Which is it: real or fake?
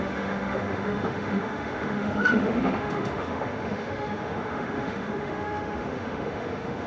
fake